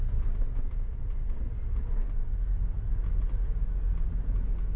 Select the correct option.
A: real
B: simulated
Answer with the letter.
A